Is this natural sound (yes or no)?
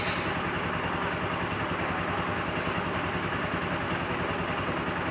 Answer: yes